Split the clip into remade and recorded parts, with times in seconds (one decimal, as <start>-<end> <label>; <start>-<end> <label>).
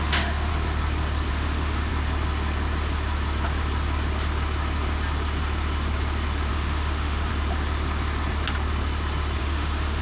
0.0-0.5 remade; 0.5-1.3 recorded; 1.3-1.9 remade; 1.9-6.5 recorded; 6.5-7.3 remade; 7.3-9.4 recorded; 9.4-10.0 remade